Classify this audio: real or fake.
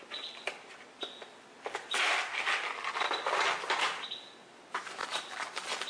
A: real